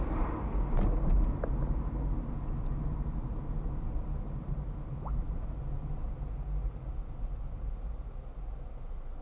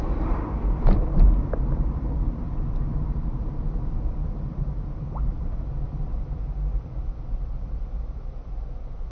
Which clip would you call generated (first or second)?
second